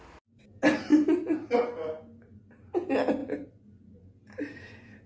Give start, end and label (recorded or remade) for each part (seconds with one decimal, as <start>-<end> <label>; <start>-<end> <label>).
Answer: 0.0-5.1 recorded